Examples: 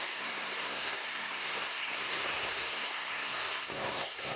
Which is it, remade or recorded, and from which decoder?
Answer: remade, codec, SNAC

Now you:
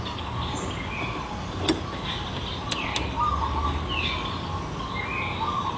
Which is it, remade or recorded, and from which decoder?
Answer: recorded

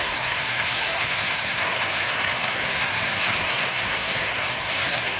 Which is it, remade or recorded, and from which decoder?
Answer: remade, codec, SNAC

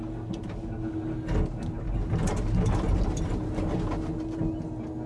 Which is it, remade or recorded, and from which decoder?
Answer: recorded